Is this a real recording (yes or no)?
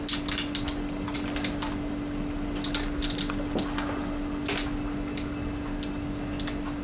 yes